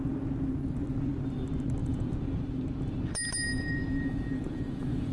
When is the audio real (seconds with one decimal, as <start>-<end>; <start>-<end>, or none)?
0.0-1.8; 2.4-3.5